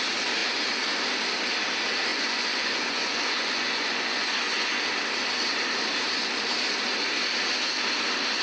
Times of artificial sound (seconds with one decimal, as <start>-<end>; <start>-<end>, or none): 2.1-4.8